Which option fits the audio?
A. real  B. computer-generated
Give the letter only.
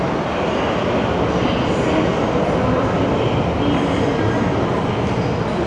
A